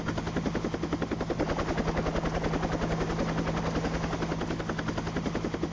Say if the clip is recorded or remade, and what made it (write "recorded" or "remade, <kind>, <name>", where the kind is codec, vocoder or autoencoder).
recorded